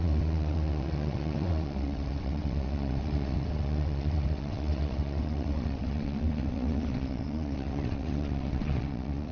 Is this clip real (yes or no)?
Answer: no